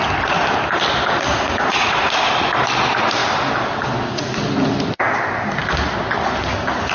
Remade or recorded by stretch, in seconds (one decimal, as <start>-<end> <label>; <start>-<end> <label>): 0.0-1.3 recorded; 1.3-1.9 remade; 1.9-6.9 recorded